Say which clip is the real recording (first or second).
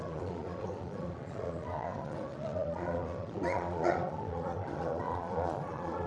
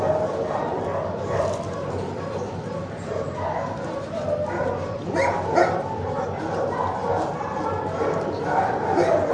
second